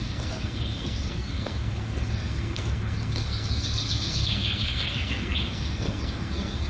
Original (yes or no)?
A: no